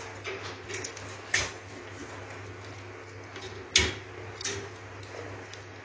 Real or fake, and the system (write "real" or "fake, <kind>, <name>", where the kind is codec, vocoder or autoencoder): real